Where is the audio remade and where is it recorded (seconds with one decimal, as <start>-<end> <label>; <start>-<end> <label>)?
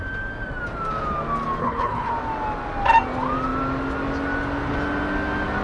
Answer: 0.0-1.6 recorded; 1.6-2.1 remade; 2.1-5.6 recorded